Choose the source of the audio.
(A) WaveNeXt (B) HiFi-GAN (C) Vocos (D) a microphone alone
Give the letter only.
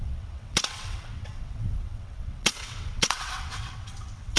A